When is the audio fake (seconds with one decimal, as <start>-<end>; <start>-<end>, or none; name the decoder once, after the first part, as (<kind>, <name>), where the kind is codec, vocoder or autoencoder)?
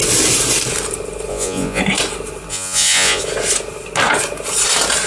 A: 1.3-1.8 (vocoder, Vocos); 2.5-3.2